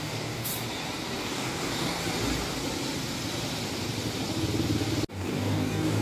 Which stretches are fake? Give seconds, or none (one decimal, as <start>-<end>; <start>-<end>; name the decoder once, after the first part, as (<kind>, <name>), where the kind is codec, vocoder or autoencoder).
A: 0.0-0.5 (codec, DAC); 1.2-2.0; 5.1-6.0